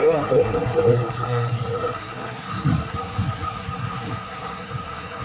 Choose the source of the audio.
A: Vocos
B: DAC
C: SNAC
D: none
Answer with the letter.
C